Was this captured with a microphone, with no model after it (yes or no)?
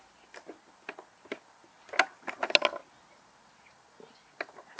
yes